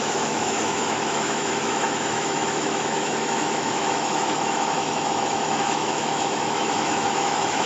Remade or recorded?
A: remade